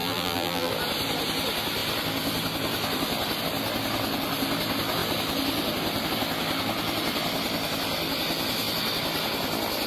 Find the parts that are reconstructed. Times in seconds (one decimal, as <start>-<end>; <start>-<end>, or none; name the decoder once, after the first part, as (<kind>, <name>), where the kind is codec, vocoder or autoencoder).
0.0-0.7 (vocoder, BigVGAN v2)